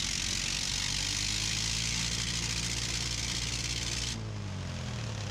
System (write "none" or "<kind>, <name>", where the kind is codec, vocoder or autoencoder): none